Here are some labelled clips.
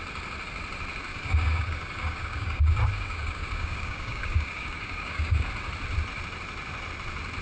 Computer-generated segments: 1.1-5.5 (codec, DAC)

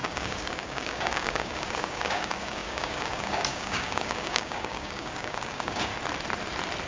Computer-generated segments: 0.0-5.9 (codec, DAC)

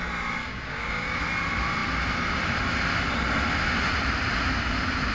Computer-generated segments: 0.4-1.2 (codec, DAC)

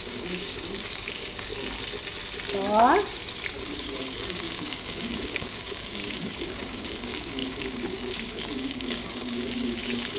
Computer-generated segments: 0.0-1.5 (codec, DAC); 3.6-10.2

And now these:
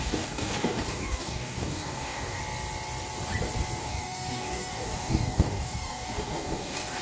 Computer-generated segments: 0.0-2.4 (codec, DAC); 3.8-7.0